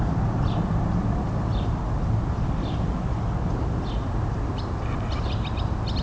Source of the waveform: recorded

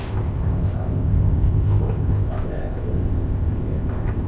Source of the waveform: remade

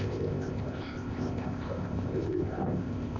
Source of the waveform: remade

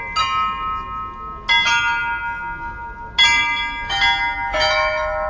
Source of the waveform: recorded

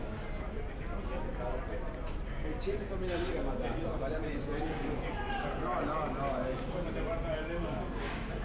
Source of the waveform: recorded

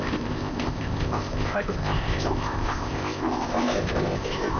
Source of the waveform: remade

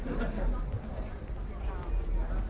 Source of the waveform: recorded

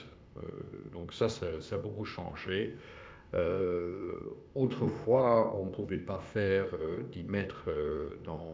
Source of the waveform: remade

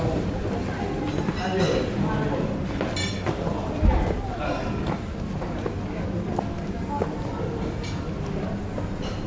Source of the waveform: recorded